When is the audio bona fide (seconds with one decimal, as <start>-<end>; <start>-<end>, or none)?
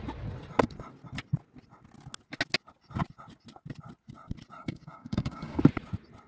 0.0-4.6; 5.6-6.3